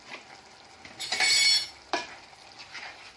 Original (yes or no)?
yes